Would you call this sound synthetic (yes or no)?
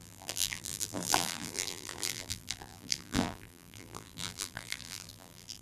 yes